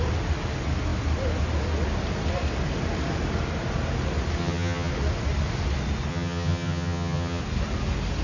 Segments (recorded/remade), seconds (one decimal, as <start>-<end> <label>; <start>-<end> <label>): 0.0-4.4 recorded; 4.4-4.9 remade; 4.9-6.1 recorded; 6.1-7.4 remade; 7.4-8.2 recorded